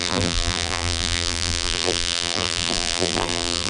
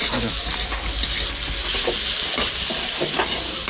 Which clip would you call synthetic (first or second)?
first